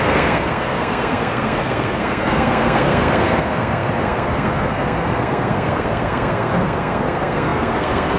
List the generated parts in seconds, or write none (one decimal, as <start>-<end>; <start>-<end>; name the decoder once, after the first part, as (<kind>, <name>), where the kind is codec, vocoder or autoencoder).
0.0-8.2 (codec, SNAC)